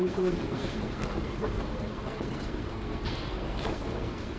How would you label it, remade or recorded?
remade